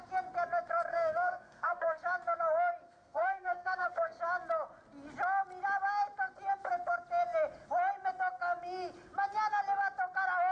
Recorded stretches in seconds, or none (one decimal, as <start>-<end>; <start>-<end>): 0.0-0.9; 2.0-2.8; 4.2-10.5